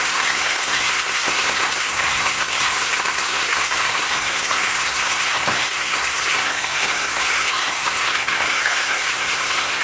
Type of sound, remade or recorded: remade